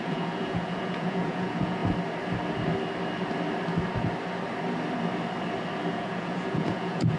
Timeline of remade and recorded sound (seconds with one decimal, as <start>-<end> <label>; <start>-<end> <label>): 0.0-1.8 remade; 1.8-5.9 recorded; 5.9-7.2 remade